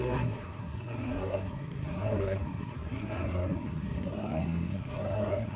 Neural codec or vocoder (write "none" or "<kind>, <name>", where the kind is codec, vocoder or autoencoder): codec, SNAC